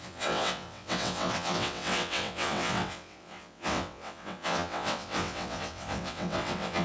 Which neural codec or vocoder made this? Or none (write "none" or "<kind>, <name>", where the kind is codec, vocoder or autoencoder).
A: vocoder, WaveNeXt